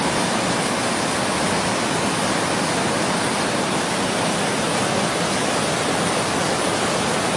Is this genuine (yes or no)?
yes